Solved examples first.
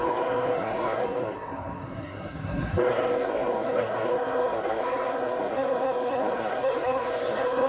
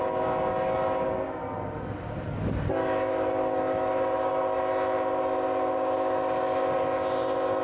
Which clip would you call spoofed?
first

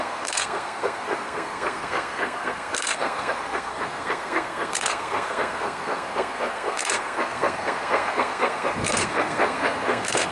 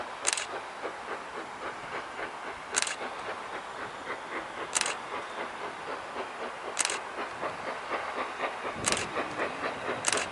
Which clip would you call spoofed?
first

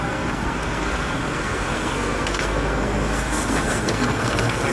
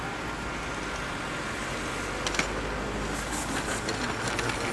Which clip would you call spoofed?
first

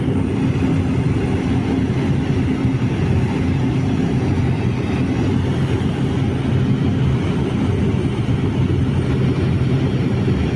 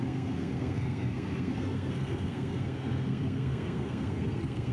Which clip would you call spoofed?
second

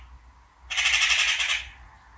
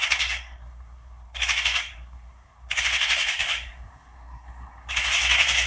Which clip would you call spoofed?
second